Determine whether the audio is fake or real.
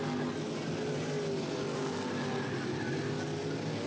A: real